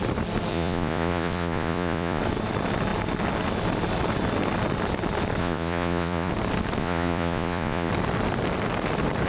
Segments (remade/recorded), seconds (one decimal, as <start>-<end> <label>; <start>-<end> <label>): 0.0-0.5 recorded; 0.5-2.2 remade; 2.2-5.4 recorded; 5.4-6.3 remade; 6.3-6.8 recorded; 6.8-7.9 remade; 7.9-9.3 recorded